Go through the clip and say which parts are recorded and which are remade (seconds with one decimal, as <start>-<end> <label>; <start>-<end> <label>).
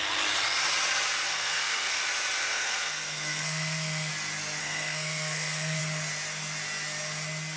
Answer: 0.0-1.3 recorded; 1.3-2.0 remade; 2.0-2.4 recorded; 2.4-4.1 remade; 4.1-4.6 recorded; 4.6-5.8 remade; 5.8-7.6 recorded